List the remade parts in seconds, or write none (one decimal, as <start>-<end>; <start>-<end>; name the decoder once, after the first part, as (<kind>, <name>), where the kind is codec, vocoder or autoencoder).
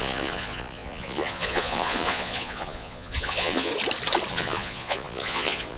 0.0-3.7 (vocoder, Vocos); 4.3-5.8